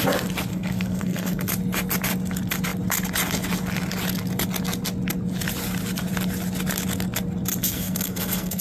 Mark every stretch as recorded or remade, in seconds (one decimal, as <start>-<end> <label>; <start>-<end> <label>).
0.0-0.5 recorded; 0.5-1.5 remade; 1.5-7.6 recorded; 7.6-8.6 remade